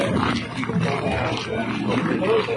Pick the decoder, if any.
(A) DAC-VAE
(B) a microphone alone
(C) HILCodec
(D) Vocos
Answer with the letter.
B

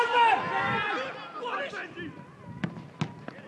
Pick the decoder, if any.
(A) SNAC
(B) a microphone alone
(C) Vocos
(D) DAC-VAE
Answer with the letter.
B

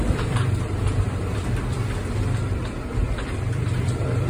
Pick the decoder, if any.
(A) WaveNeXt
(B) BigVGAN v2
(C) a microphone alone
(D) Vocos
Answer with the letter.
B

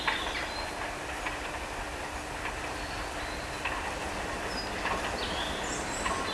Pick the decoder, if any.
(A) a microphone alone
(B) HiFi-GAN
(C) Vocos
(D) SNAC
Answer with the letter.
A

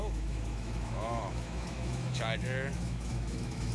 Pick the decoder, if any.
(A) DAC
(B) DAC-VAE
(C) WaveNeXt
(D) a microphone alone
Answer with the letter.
B